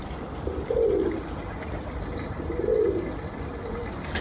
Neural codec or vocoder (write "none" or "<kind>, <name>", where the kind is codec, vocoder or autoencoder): none